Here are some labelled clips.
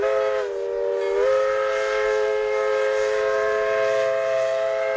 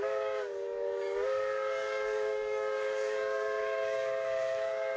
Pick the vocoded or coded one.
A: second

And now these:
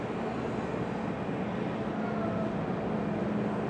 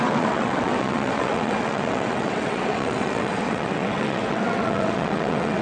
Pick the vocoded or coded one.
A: second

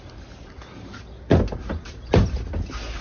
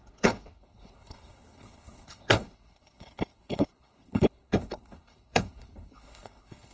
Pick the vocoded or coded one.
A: second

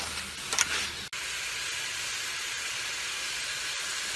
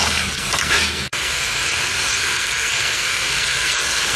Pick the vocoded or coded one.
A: second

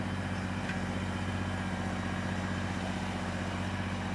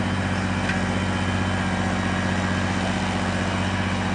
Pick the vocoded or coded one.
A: first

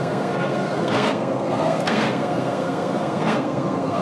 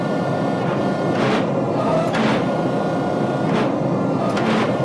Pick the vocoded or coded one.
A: first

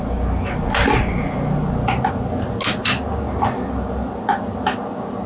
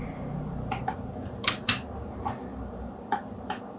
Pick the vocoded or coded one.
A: second